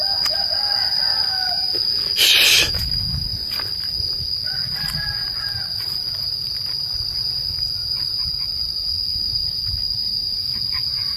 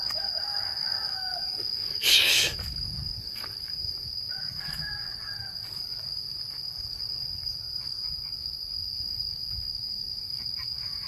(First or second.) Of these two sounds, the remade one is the second